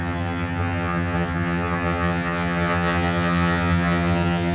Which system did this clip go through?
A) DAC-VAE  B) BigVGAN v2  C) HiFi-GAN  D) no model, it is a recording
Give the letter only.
C